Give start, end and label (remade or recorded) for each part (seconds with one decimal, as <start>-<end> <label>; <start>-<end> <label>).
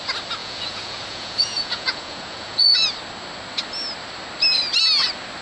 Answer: 0.0-0.4 recorded; 0.4-2.9 remade; 2.9-5.4 recorded